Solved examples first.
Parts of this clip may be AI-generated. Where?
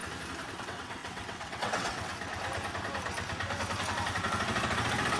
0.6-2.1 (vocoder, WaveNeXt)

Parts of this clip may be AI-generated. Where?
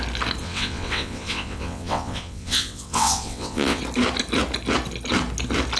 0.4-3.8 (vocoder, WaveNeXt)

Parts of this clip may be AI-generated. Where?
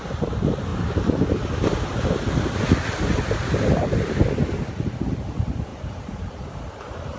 5.7-6.6 (vocoder, BigVGAN v2)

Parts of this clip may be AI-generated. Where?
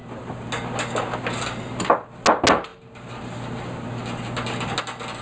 none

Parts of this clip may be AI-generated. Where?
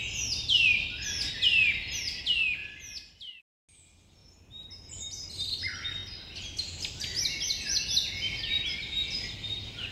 4.2-5.3 (vocoder, BigVGAN v2)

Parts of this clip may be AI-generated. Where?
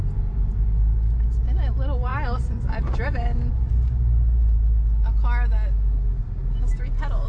none